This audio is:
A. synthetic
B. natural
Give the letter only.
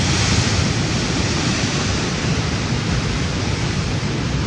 B